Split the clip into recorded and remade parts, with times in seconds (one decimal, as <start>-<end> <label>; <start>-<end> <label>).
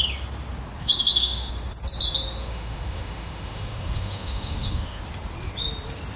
0.0-0.8 recorded; 0.8-1.5 remade; 1.5-2.4 recorded; 2.4-5.0 remade; 5.0-6.2 recorded